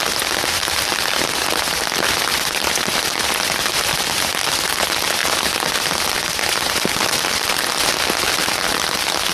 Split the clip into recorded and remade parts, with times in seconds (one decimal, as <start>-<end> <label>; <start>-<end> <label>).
0.0-2.3 recorded; 2.3-4.1 remade; 4.1-9.3 recorded